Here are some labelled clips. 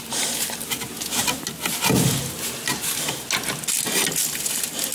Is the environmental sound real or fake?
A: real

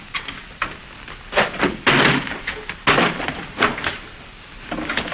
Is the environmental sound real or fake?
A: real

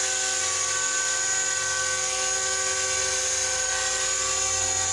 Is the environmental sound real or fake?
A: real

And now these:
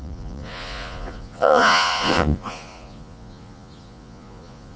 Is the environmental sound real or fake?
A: fake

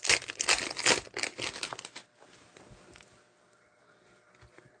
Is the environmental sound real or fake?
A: real